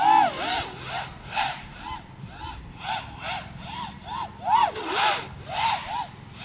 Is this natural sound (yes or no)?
yes